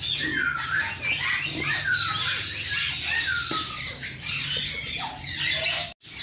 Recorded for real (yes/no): yes